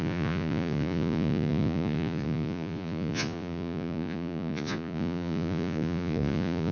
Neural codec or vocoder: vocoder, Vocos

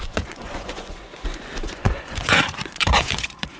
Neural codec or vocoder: vocoder, Vocos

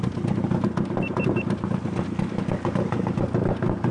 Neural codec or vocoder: none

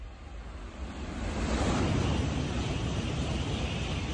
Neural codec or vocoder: none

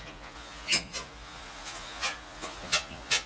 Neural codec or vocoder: vocoder, Vocos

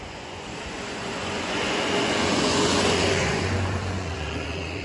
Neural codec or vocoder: vocoder, Vocos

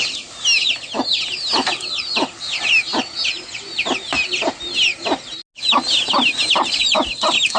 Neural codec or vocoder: none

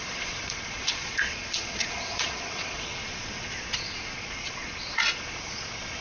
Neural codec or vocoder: vocoder, Vocos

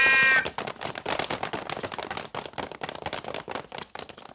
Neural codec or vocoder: none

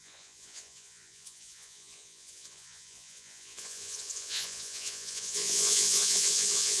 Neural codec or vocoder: vocoder, Vocos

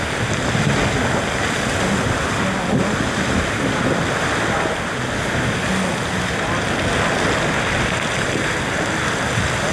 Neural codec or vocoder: none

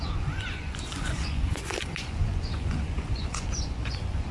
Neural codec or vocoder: vocoder, Vocos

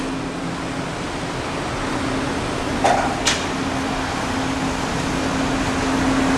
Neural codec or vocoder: none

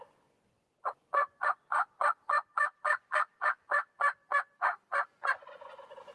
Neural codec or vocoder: vocoder, Vocos